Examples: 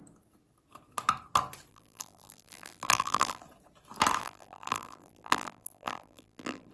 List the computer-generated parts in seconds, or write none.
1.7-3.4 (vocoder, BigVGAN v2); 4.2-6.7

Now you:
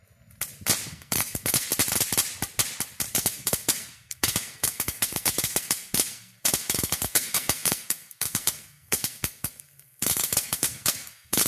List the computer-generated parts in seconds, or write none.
0.9-1.7 (codec, SNAC); 3.1-11.5

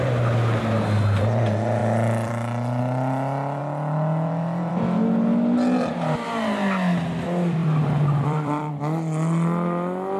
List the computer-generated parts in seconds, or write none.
1.8-2.8 (vocoder, BigVGAN v2); 3.6-4.7; 7.6-8.7

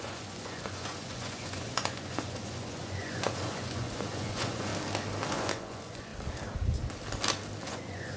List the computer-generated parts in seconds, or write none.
0.0-4.7 (vocoder, Vocos); 5.3-6.1; 7.7-8.2

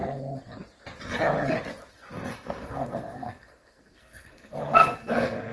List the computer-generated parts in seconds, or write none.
1.9-5.5 (codec, SNAC)

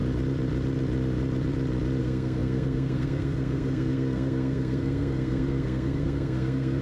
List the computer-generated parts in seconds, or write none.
2.0-6.8 (codec, SNAC)